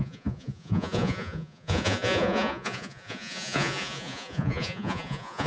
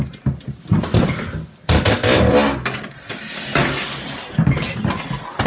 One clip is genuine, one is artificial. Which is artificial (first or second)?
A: first